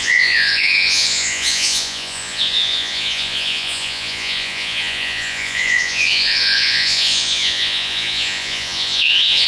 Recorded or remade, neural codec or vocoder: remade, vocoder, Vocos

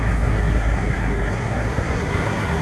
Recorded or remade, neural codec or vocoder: remade, codec, SNAC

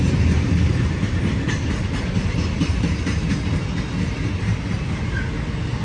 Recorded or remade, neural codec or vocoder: recorded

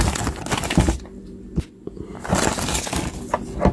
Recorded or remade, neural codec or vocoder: recorded